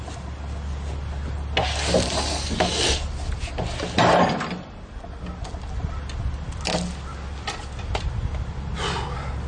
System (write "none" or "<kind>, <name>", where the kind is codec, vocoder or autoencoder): none